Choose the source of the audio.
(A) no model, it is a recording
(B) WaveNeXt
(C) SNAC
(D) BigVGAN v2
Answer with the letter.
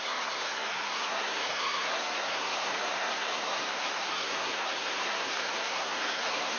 C